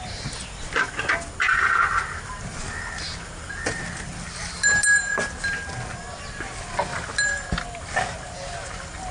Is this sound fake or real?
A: real